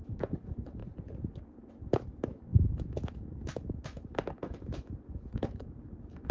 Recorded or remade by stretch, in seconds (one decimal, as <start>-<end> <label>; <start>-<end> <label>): 0.0-0.8 remade; 0.8-1.4 recorded; 1.4-6.3 remade